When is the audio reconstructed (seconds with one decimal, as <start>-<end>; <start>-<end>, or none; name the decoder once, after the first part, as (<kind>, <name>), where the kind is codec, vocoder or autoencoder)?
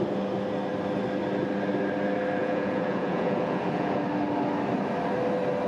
2.4-4.0 (vocoder, Vocos)